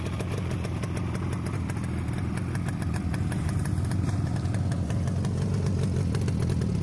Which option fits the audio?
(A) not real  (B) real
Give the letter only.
B